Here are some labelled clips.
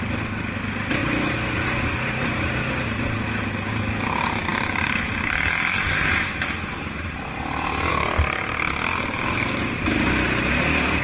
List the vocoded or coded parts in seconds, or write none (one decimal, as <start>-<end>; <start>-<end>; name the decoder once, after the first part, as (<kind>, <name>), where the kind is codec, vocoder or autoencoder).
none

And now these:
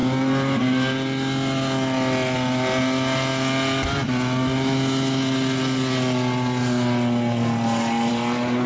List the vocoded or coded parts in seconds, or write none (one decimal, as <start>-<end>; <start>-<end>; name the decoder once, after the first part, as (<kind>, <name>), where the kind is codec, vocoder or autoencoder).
none

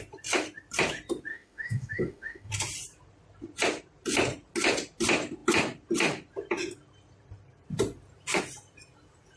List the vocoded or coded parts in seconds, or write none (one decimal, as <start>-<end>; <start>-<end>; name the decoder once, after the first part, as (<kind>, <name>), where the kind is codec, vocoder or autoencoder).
1.3-2.5 (autoencoder, DAC-VAE)

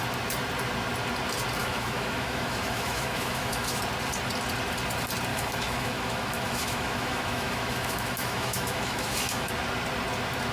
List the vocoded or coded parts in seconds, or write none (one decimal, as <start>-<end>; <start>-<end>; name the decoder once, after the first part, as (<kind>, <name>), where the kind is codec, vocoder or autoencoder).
1.6-3.8 (autoencoder, DAC-VAE); 5.3-9.5